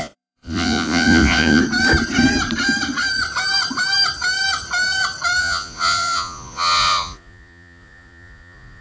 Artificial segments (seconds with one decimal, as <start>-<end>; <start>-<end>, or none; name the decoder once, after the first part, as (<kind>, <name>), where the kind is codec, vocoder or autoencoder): 0.0-1.6 (vocoder, Vocos); 5.4-8.8